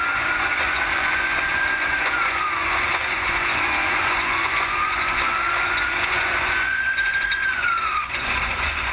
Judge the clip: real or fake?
fake